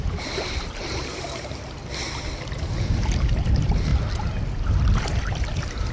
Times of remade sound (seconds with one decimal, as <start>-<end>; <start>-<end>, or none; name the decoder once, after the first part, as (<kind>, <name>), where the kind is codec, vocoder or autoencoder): 0.0-1.8 (vocoder, BigVGAN v2); 3.5-3.9